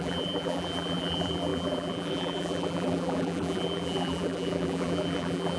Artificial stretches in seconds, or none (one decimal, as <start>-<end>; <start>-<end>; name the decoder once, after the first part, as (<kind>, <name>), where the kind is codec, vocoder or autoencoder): 0.0-5.6 (vocoder, BigVGAN v2)